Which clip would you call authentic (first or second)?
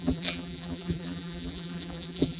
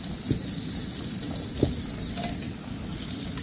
second